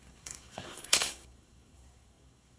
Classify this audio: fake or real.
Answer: fake